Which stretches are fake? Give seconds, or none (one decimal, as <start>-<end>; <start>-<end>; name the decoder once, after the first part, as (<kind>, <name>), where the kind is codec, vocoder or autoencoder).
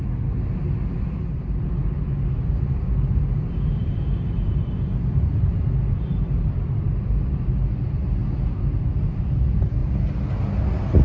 none